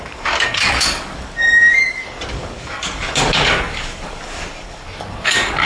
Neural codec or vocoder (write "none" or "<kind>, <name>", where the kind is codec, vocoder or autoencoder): codec, DAC